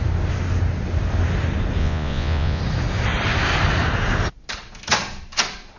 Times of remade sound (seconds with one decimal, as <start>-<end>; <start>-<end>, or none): 1.8-2.6